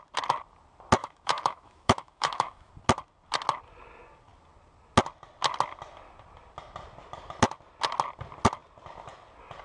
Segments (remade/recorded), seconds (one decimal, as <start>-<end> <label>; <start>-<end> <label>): 0.0-1.0 recorded; 1.0-2.7 remade; 2.7-9.6 recorded